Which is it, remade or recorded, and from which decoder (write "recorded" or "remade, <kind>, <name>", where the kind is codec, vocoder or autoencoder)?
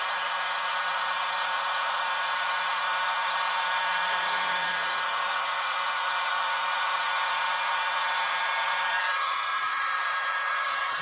remade, vocoder, Vocos